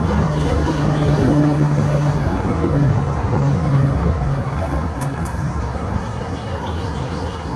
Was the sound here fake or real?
fake